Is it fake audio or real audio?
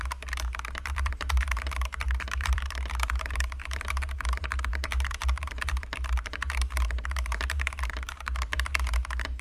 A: fake